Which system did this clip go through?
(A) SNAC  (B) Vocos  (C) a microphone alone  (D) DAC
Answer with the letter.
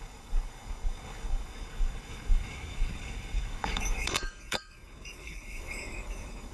D